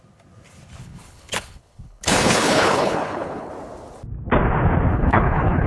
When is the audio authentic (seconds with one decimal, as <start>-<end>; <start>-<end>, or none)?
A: 0.0-0.8; 3.5-4.9

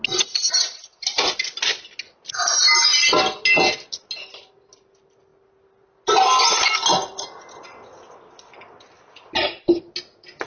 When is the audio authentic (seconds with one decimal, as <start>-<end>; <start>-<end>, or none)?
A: 0.0-10.5

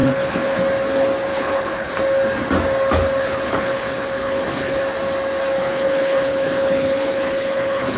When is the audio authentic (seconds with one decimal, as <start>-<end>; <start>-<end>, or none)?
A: 0.6-1.3; 2.0-3.2; 4.8-5.6

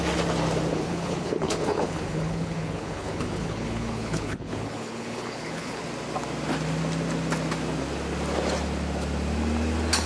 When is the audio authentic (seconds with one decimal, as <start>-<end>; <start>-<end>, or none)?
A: 0.0-0.7; 5.8-10.1

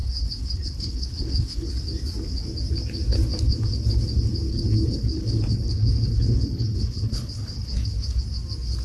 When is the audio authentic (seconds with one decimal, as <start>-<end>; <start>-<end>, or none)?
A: 1.7-4.5; 8.2-8.8

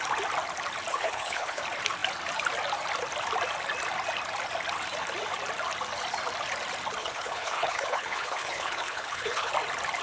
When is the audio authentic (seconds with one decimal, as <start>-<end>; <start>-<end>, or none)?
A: 0.0-0.9; 1.6-7.0; 9.5-10.0

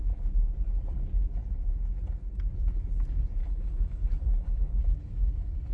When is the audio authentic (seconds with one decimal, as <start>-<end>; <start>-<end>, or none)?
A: 0.0-3.4; 4.8-5.7

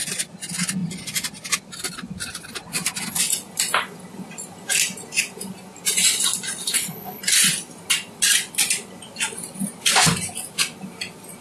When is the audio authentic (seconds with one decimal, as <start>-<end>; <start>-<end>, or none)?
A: 0.0-6.6; 7.2-11.4